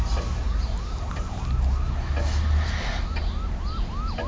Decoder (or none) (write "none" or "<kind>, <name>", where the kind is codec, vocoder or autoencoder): none